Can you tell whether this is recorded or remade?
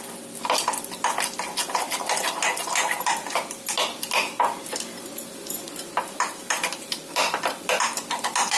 recorded